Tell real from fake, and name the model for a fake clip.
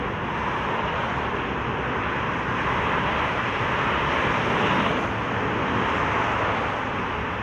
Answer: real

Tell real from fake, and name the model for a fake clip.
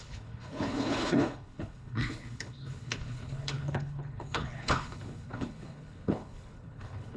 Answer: fake, codec, HILCodec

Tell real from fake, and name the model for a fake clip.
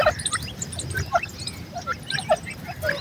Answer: real